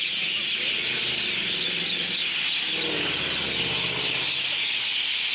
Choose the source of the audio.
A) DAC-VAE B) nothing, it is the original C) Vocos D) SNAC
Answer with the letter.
B